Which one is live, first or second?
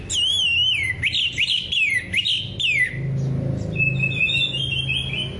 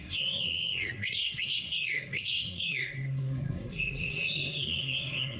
first